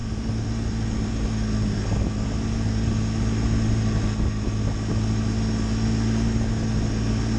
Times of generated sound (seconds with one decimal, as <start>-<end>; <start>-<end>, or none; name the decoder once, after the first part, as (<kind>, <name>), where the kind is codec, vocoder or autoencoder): 0.0-1.1 (vocoder, BigVGAN v2)